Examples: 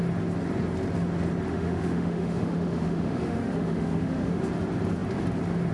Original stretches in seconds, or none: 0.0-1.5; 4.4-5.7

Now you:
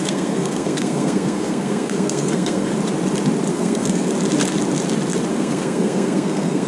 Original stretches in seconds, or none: 2.7-3.5; 4.1-5.3